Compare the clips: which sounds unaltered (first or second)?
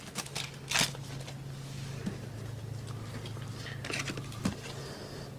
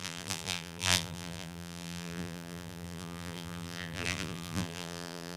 first